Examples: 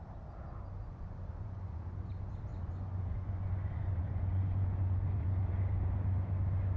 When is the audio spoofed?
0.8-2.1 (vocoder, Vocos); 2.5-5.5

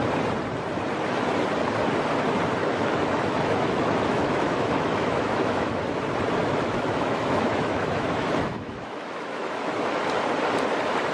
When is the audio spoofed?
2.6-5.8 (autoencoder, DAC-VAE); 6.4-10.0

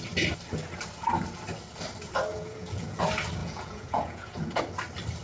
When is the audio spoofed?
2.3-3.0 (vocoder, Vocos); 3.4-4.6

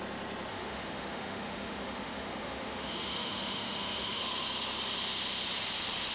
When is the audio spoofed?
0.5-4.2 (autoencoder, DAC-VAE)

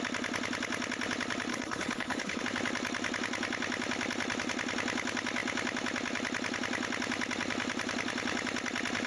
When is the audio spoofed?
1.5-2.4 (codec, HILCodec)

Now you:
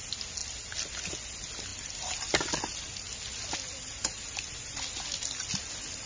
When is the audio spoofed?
none

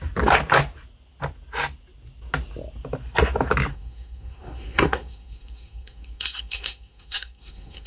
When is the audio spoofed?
3.7-7.9 (codec, SNAC)

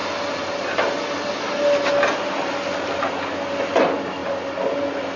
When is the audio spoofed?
none